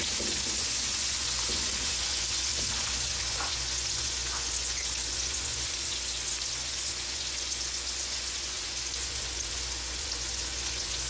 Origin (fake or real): fake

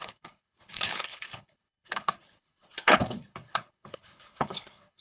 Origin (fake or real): fake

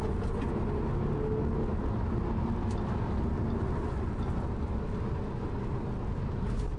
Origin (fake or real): real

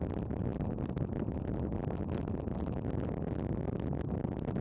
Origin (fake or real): real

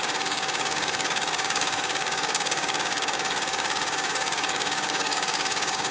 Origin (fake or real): fake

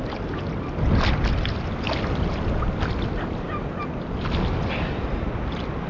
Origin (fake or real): real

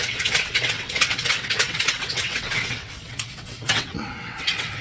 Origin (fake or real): fake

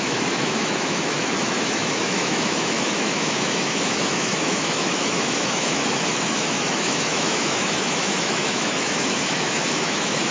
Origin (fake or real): fake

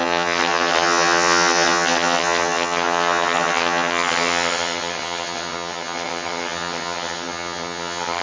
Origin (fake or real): fake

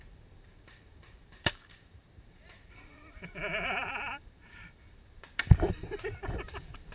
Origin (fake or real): fake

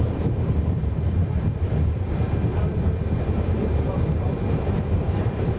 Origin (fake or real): fake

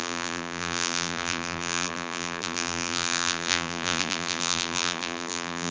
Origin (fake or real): fake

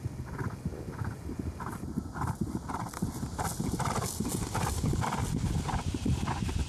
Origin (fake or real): real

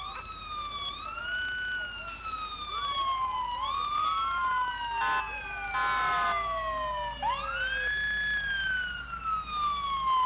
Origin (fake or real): real